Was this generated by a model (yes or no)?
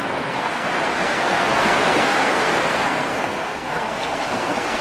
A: yes